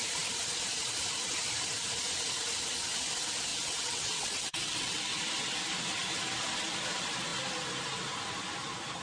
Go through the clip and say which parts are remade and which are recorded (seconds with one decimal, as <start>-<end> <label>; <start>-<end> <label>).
0.0-3.5 recorded; 3.5-5.0 remade; 5.0-9.0 recorded